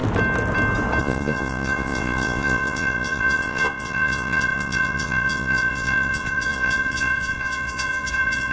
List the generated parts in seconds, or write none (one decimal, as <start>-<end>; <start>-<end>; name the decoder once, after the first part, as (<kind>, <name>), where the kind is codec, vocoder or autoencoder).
1.0-8.5 (vocoder, Vocos)